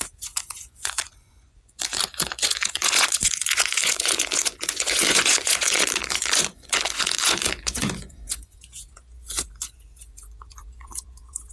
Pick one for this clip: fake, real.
fake